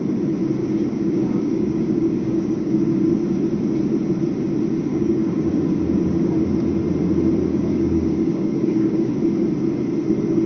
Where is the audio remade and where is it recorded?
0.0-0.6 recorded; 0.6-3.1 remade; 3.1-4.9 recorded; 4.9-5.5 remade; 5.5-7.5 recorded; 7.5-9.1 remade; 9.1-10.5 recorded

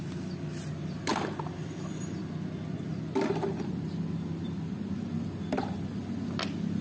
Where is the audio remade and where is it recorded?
0.0-6.8 recorded